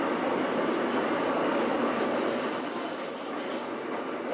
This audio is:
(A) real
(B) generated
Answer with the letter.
A